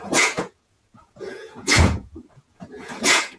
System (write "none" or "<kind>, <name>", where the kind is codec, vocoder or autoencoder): vocoder, Vocos